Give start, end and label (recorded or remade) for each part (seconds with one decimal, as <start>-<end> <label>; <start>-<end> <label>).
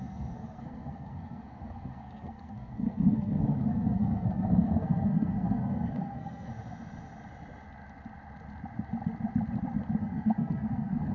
0.0-6.5 remade; 6.5-10.0 recorded; 10.0-11.1 remade